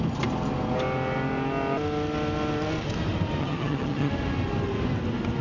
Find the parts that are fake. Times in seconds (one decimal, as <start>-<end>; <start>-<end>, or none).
3.4-4.1